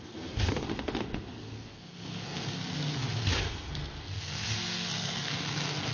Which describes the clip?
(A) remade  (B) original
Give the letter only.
A